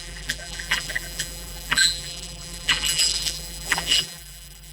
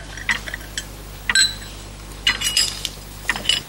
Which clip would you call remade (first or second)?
first